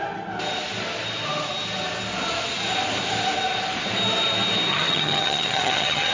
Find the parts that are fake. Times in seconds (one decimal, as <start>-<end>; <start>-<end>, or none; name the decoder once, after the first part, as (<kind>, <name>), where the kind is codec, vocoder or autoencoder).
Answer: 4.7-6.1 (vocoder, HiFi-GAN)